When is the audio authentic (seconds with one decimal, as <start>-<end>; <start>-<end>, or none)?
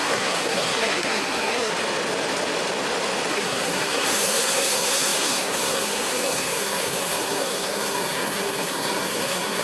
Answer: 1.7-3.3